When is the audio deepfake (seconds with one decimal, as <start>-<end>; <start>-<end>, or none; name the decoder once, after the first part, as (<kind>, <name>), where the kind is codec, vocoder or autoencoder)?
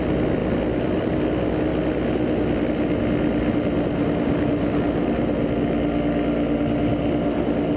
0.4-1.1 (vocoder, BigVGAN v2)